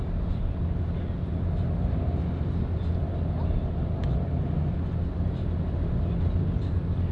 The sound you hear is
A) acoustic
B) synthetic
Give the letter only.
A